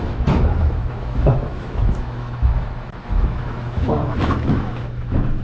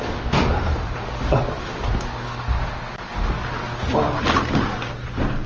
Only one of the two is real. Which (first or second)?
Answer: second